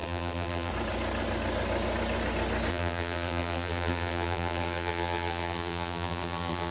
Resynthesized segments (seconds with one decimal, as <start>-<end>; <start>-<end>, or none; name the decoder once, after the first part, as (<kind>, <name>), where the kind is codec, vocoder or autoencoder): 0.0-0.7 (vocoder, BigVGAN v2); 2.7-6.7